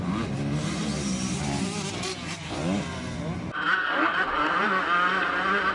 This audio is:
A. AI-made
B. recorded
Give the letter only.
B